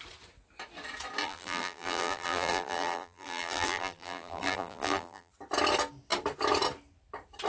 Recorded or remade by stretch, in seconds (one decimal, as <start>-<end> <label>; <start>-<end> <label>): 0.0-1.2 recorded; 1.2-5.3 remade; 5.3-7.5 recorded